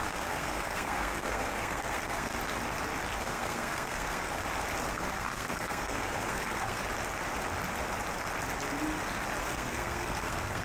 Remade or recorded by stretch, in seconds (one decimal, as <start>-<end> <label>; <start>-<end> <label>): 0.0-2.3 remade; 2.3-3.2 recorded; 3.2-4.4 remade; 4.4-4.9 recorded; 4.9-6.8 remade; 6.8-9.4 recorded; 9.4-10.6 remade

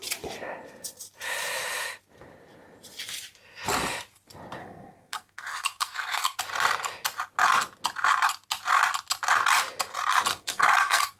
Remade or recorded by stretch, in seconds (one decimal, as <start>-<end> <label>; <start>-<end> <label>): 0.0-4.6 recorded; 4.6-6.4 remade; 6.4-10.3 recorded; 10.3-11.2 remade

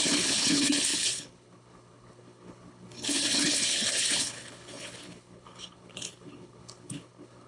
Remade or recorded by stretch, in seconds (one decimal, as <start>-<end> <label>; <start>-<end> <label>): 0.0-7.5 remade

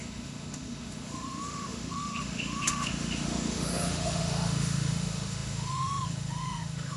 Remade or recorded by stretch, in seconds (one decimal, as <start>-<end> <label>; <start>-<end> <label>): 0.0-7.0 remade

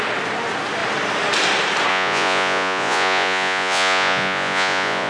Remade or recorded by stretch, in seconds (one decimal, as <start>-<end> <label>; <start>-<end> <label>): 0.0-1.9 recorded; 1.9-5.1 remade